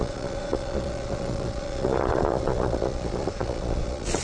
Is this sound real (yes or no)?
no